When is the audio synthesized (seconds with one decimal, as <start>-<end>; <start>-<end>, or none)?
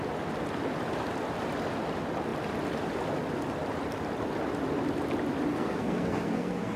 5.5-6.8